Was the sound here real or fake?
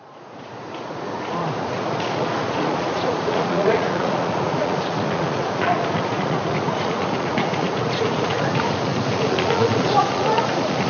fake